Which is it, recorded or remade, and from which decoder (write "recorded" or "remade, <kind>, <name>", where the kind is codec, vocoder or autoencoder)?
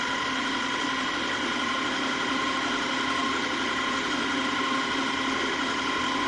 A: recorded